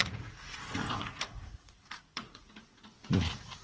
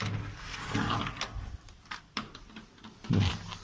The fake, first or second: first